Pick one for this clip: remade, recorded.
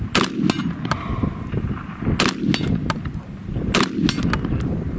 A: recorded